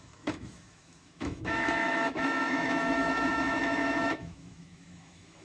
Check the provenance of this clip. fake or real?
fake